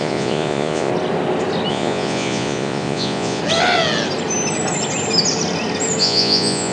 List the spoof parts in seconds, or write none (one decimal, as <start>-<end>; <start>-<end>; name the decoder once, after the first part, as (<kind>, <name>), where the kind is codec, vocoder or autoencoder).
0.0-0.9 (vocoder, Vocos); 1.7-3.4; 6.0-6.7